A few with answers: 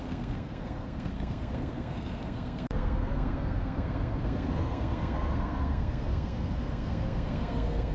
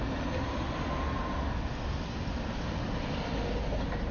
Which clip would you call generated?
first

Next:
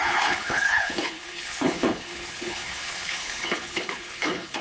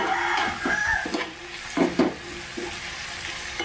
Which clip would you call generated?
first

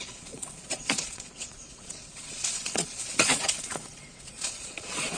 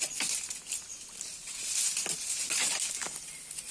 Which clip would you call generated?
first